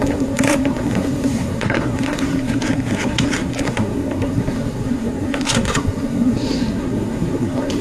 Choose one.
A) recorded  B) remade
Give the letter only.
B